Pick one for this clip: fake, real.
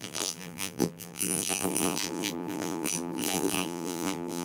fake